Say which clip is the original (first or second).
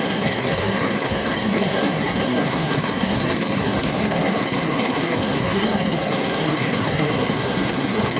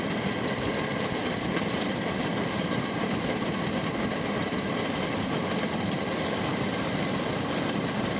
second